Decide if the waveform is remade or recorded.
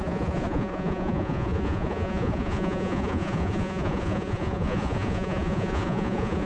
remade